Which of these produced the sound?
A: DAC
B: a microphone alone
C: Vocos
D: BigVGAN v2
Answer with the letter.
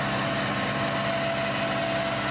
B